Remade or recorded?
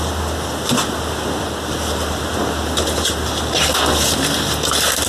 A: recorded